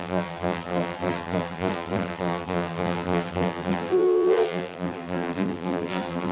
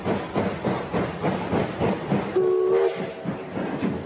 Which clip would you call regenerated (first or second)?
first